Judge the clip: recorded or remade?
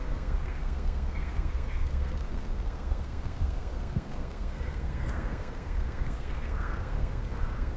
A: remade